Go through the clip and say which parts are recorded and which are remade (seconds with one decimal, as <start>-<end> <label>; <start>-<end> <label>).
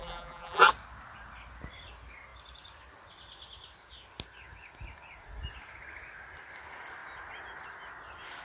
0.0-0.7 remade; 0.7-8.4 recorded